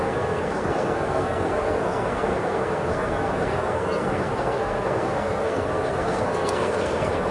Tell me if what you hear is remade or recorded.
remade